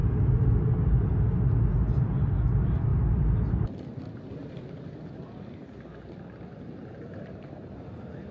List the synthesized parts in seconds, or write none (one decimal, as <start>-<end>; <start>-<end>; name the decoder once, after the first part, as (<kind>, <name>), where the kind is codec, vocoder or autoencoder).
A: none